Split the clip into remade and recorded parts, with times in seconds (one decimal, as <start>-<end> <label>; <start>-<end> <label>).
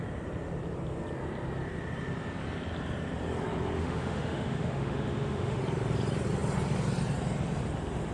0.0-3.8 recorded; 3.8-5.6 remade; 5.6-8.1 recorded